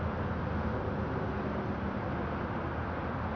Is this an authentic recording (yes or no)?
yes